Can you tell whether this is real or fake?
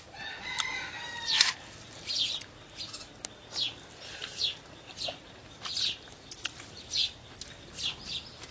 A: real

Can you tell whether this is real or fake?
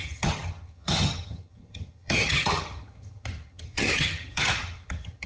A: fake